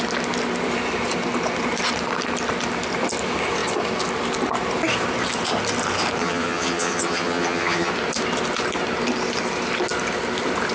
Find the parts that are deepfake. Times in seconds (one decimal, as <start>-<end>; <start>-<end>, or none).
6.2-7.9